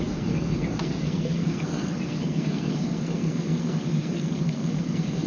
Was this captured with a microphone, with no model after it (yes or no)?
no